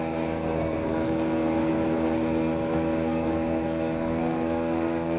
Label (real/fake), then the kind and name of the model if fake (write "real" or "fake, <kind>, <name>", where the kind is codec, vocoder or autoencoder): fake, codec, SNAC